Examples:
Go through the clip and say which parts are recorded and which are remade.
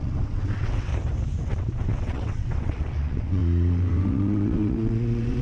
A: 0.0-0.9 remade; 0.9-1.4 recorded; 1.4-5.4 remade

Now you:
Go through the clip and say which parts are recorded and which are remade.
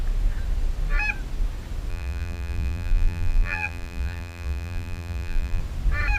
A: 0.0-1.9 recorded; 1.9-5.6 remade; 5.6-6.2 recorded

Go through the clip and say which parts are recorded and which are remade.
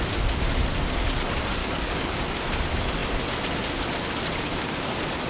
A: 0.0-1.6 recorded; 1.6-2.2 remade; 2.2-5.3 recorded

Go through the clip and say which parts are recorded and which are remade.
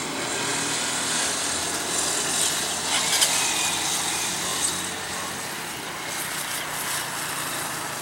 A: 0.0-0.5 recorded; 0.5-1.6 remade; 1.6-4.5 recorded; 4.5-5.9 remade; 5.9-8.0 recorded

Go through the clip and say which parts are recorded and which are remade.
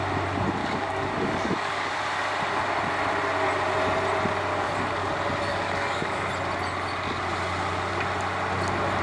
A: 0.0-0.6 recorded; 0.6-1.9 remade; 1.9-4.5 recorded; 4.5-5.1 remade; 5.1-5.5 recorded; 5.5-6.3 remade; 6.3-9.0 recorded